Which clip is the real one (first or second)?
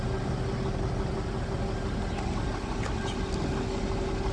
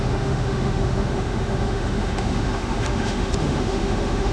first